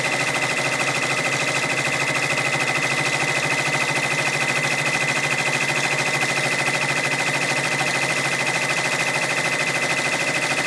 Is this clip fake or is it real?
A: real